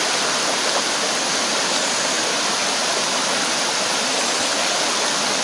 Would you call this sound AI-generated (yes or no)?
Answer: no